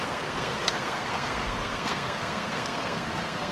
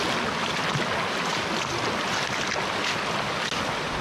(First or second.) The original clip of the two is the second